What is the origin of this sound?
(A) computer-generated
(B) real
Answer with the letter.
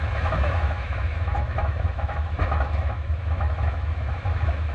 A